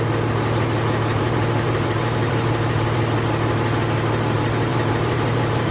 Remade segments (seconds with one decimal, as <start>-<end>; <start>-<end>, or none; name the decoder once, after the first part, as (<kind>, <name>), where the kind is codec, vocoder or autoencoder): 1.1-3.0 (vocoder, BigVGAN v2); 4.7-5.7